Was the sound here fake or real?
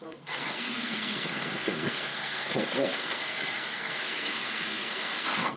fake